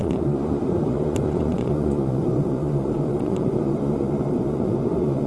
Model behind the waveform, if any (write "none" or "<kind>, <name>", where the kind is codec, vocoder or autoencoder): vocoder, Vocos